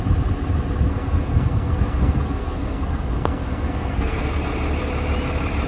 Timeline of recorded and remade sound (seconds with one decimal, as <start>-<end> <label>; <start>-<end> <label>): 0.0-0.9 recorded; 0.9-4.3 remade; 4.3-5.7 recorded